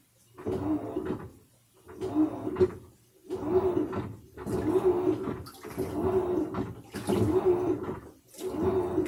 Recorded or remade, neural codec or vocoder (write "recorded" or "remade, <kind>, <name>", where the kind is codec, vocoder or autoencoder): recorded